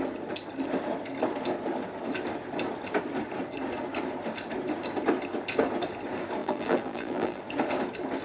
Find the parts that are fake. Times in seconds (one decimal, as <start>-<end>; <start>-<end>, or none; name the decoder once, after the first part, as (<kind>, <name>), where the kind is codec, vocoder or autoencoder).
6.4-7.4 (vocoder, BigVGAN v2)